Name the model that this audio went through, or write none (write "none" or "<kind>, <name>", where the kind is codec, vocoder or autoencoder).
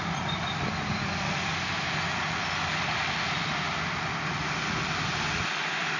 none